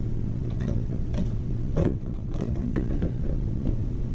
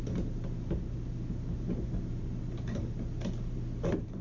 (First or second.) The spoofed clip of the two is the first